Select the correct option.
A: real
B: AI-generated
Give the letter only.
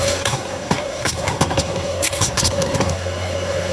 B